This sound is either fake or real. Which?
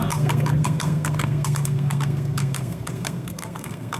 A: fake